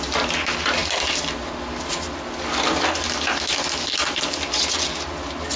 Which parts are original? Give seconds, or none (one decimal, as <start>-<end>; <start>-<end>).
0.0-5.6